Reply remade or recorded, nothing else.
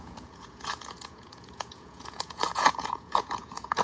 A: remade